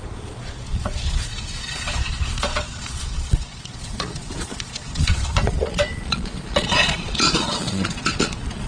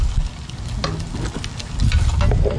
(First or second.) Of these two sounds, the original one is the second